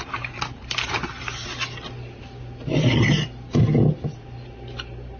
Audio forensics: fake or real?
real